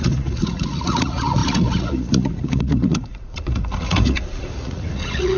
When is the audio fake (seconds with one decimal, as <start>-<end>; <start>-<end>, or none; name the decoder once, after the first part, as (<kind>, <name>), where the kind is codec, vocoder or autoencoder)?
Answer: 0.0-5.4 (vocoder, Vocos)